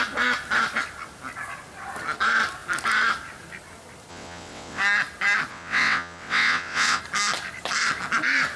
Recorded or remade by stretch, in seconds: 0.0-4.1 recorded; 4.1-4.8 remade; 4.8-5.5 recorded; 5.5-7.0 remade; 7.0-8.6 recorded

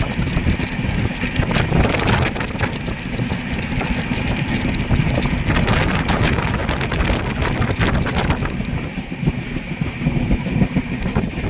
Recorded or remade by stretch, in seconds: 0.0-11.5 recorded

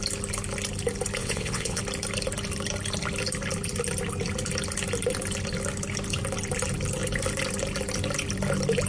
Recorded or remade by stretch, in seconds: 0.0-1.2 recorded; 1.2-1.8 remade; 1.8-8.9 recorded

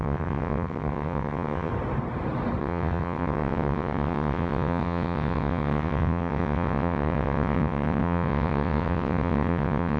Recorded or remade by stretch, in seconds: 0.0-1.7 remade; 1.7-2.6 recorded; 2.6-10.0 remade

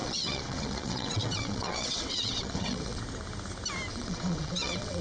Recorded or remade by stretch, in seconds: 0.0-3.0 remade; 3.0-3.9 recorded; 3.9-5.0 remade

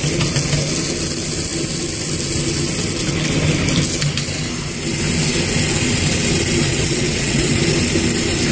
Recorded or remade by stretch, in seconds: 0.0-6.7 recorded; 6.7-7.6 remade; 7.6-8.5 recorded

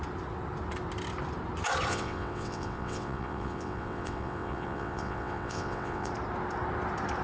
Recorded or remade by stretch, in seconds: 0.0-1.9 recorded; 1.9-6.1 remade; 6.1-7.2 recorded

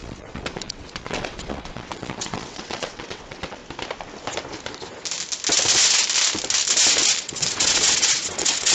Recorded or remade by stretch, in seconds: 0.0-3.6 remade; 3.6-7.2 recorded; 7.2-8.7 remade